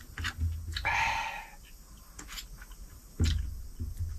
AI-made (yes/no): no